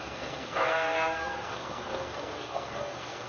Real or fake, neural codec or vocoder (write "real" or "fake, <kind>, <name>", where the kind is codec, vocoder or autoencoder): fake, codec, SNAC